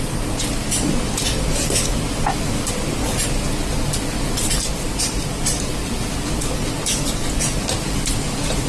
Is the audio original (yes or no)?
yes